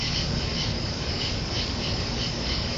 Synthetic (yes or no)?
yes